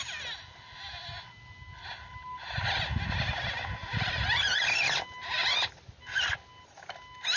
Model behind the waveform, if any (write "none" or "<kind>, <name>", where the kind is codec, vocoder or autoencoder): none